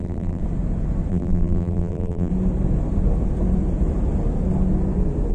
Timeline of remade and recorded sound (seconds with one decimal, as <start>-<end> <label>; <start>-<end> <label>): 0.0-0.4 remade; 0.4-1.1 recorded; 1.1-2.3 remade; 2.3-5.3 recorded